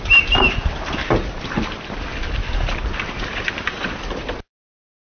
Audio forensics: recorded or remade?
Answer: recorded